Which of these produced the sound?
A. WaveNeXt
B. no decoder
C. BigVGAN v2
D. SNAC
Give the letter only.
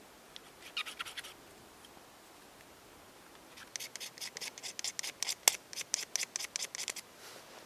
B